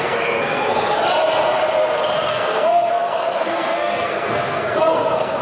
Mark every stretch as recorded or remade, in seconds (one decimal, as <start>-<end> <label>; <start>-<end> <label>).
0.0-1.0 remade; 1.0-2.3 recorded; 2.3-5.4 remade